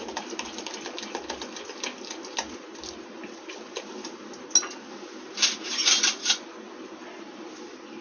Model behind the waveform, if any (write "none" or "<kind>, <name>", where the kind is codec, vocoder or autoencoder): none